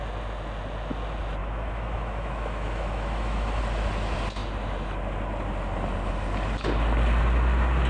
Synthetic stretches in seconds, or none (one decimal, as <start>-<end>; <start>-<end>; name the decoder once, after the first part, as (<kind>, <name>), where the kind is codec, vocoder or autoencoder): 1.4-3.6 (autoencoder, DAC-VAE)

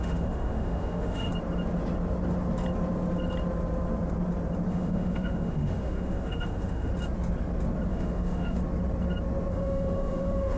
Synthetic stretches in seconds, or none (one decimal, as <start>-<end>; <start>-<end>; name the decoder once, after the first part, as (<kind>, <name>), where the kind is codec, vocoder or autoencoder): 0.0-1.3 (autoencoder, DAC-VAE); 4.7-6.9; 7.9-8.6; 9.5-10.6

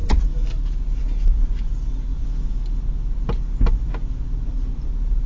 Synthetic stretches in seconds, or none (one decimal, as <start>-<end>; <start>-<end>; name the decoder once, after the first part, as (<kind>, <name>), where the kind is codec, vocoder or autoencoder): none